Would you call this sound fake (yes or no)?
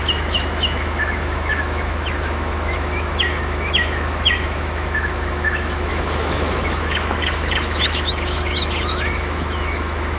yes